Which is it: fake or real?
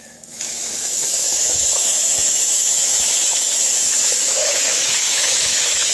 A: fake